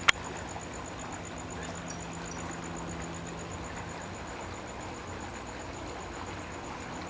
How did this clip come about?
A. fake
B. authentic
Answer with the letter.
B